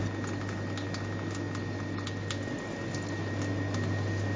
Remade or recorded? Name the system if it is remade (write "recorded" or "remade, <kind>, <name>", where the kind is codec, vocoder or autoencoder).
recorded